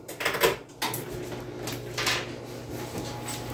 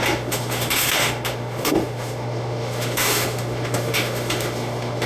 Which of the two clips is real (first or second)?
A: first